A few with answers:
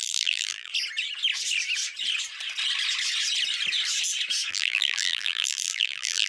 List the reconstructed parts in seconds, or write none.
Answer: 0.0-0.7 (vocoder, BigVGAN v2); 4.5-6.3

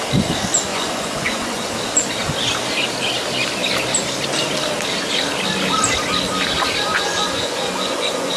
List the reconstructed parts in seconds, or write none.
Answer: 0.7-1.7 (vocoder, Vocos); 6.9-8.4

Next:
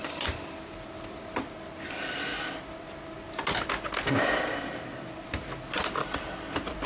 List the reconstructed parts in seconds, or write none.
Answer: 0.0-2.3 (vocoder, BigVGAN v2); 4.2-6.9

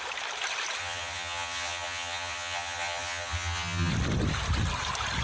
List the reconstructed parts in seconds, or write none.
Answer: 0.8-3.9 (vocoder, HiFi-GAN)